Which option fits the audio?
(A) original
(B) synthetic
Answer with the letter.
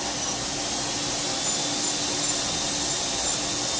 A